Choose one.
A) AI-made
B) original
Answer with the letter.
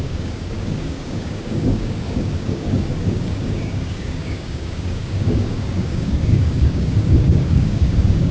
A